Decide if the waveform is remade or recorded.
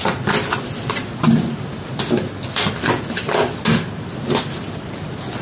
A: recorded